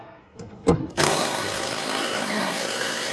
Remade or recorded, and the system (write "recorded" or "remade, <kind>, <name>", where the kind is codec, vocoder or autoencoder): remade, codec, SNAC